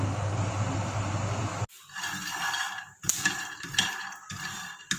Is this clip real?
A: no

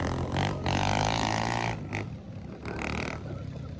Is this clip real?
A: yes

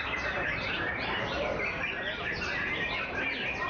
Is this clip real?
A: no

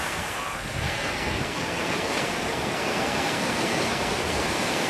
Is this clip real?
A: no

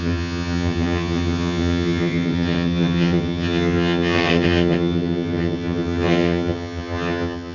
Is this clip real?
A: no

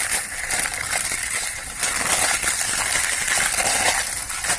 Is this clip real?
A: yes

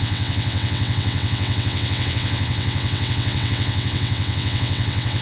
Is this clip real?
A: no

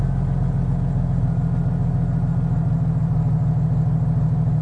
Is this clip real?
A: yes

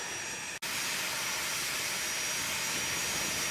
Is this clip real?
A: yes